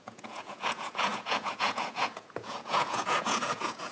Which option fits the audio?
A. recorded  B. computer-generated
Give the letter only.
B